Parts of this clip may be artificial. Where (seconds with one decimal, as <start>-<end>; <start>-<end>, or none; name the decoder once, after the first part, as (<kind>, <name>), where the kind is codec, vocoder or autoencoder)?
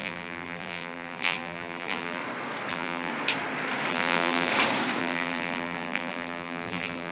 0.0-2.2 (vocoder, BigVGAN v2); 2.7-3.1; 3.9-4.5; 5.0-7.1